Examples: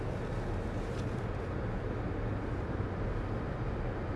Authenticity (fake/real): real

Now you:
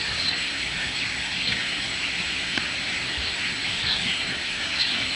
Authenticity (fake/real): fake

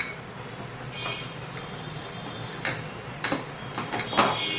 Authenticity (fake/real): real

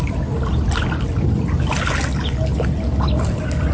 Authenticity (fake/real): real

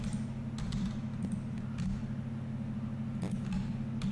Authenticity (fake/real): real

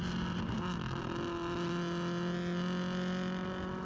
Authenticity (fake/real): real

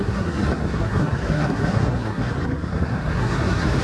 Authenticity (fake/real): fake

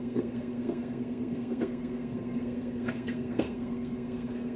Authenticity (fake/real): fake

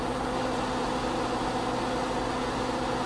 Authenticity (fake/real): real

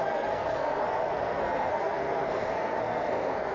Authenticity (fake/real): fake